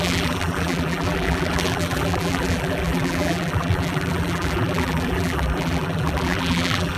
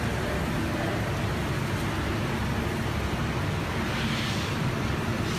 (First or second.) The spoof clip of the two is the first